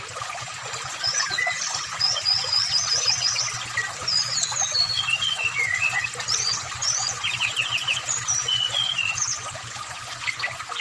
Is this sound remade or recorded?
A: remade